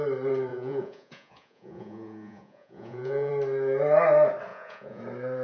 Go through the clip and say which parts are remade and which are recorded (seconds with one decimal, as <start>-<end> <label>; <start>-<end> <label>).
0.0-0.5 recorded; 0.5-3.3 remade; 3.3-4.5 recorded; 4.5-5.0 remade; 5.0-5.4 recorded